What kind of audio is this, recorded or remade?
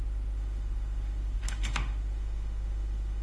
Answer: remade